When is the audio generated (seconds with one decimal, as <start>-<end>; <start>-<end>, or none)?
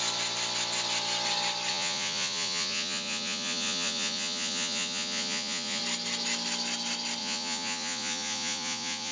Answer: 1.7-5.8; 7.2-9.1